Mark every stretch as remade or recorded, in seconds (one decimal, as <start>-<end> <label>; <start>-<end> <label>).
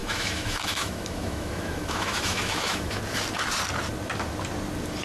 0.0-3.0 remade; 3.0-5.0 recorded